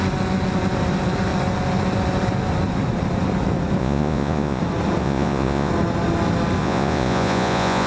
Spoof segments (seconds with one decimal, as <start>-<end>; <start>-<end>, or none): 3.8-4.6; 5.0-5.7; 6.6-7.9